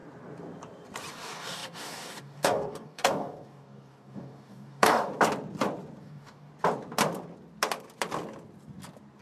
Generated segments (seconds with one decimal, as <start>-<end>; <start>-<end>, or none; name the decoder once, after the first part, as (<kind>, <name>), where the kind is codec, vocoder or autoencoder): 1.1-5.1 (codec, DAC); 6.0-6.5